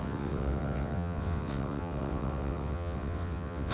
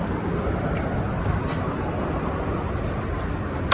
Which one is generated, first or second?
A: first